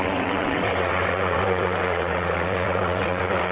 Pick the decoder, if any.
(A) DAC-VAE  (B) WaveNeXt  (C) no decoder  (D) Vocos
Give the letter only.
B